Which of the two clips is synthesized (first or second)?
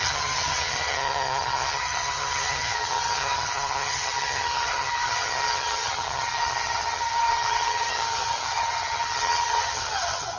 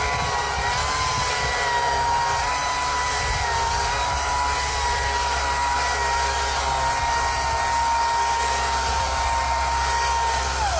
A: first